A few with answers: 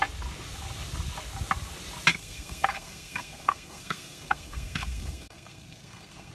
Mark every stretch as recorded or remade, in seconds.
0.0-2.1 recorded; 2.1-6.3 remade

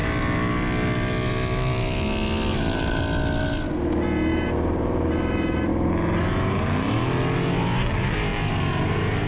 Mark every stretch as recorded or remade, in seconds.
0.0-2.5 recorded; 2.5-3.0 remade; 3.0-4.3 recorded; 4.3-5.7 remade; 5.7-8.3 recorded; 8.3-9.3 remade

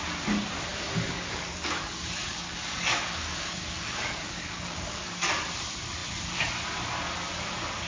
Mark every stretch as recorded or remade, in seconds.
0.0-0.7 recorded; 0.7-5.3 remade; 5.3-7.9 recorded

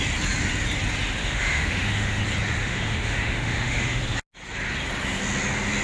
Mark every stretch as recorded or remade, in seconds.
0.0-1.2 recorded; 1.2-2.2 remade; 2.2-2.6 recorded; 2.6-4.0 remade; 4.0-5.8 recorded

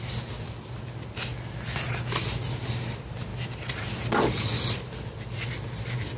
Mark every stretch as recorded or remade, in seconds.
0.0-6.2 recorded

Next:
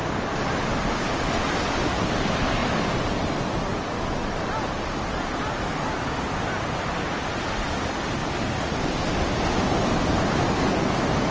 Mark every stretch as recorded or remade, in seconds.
0.0-11.3 recorded

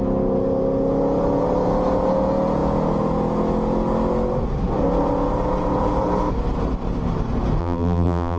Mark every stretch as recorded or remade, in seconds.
0.0-7.6 recorded; 7.6-8.4 remade